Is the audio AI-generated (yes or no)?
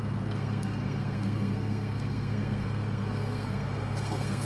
yes